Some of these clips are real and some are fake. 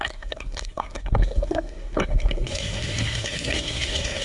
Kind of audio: fake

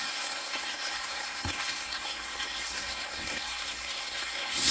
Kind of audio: fake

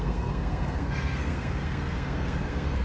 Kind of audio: fake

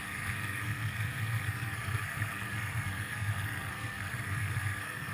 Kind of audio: fake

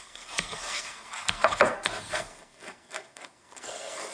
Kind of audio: fake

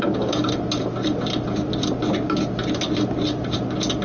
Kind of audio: real